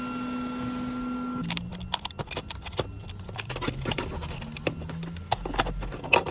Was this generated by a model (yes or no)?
no